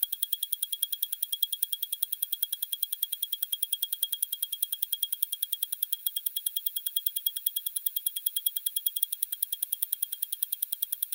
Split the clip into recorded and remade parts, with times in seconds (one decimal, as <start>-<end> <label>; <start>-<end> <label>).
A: 0.0-6.0 recorded; 6.0-9.0 remade; 9.0-11.1 recorded